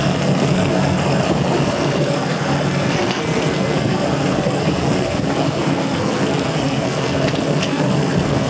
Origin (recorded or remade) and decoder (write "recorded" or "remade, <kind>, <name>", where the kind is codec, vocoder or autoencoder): remade, codec, SNAC